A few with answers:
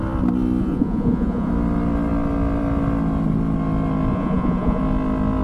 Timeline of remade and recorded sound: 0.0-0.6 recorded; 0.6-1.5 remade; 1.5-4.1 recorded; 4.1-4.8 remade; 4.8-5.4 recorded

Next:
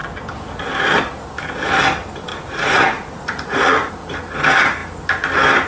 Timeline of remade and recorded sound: 0.0-2.3 recorded; 2.3-3.9 remade; 3.9-5.7 recorded